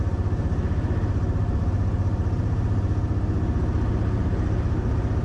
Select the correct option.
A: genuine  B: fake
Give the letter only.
A